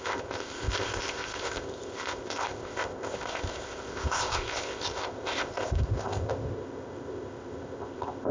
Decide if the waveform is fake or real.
fake